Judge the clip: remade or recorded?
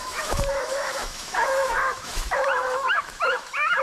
remade